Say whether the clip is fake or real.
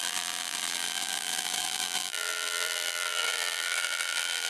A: fake